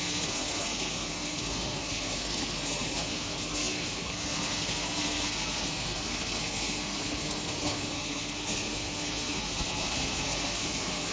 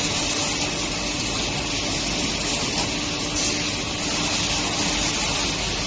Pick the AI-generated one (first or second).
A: first